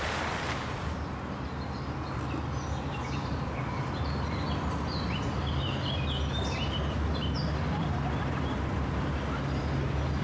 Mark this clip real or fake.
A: real